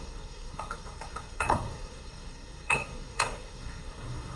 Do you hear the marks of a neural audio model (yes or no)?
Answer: yes